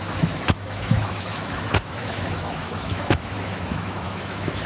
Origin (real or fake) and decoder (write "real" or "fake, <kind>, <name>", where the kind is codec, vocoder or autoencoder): fake, autoencoder, DAC-VAE